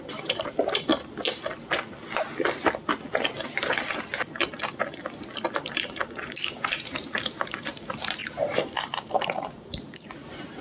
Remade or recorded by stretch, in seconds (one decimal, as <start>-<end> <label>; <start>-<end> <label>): 0.0-0.9 remade; 0.9-5.7 recorded; 5.7-10.6 remade